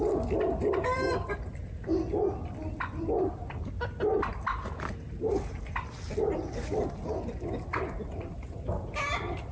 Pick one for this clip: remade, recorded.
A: recorded